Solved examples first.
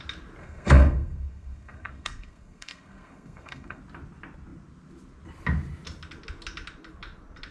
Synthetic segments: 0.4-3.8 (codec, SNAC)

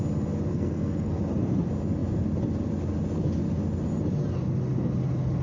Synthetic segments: 0.5-1.2 (codec, SNAC)

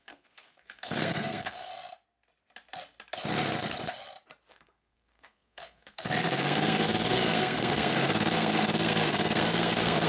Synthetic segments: 0.0-1.7 (codec, SNAC); 4.5-10.1

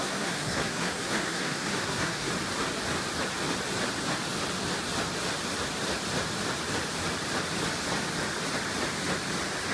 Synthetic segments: 0.0-2.3 (codec, SNAC)